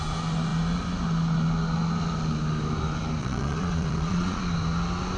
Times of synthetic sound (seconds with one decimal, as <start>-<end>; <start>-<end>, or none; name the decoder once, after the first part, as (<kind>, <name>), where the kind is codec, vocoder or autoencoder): 3.2-4.4 (vocoder, Vocos)

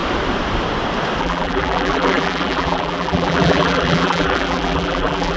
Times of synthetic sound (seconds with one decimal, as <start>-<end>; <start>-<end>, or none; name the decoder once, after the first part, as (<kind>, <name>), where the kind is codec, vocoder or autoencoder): 1.2-5.4 (vocoder, BigVGAN v2)